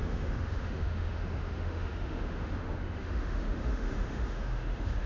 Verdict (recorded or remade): remade